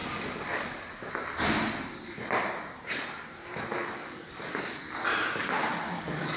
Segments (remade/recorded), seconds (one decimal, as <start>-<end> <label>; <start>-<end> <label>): 0.0-1.1 remade; 1.1-3.8 recorded; 3.8-4.4 remade; 4.4-5.7 recorded; 5.7-6.4 remade